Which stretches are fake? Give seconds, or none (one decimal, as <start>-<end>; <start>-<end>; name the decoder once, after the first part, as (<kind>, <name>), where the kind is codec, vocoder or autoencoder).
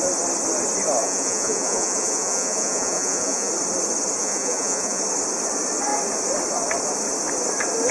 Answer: 1.0-3.5 (vocoder, Vocos); 4.2-5.0